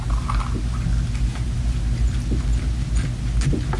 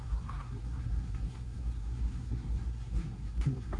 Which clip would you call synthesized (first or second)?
second